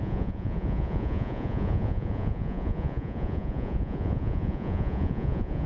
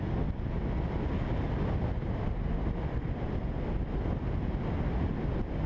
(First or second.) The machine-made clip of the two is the first